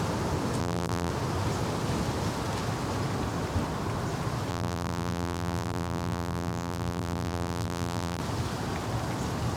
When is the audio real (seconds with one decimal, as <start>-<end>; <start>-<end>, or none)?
0.0-0.6; 1.1-4.5; 8.2-9.6